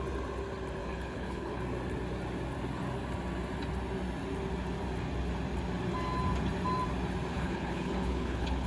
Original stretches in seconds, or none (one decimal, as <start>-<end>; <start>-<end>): 0.0-0.8; 1.6-7.3